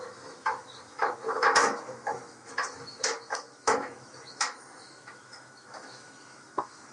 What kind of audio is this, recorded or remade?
remade